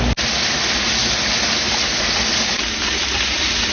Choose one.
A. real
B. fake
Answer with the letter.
A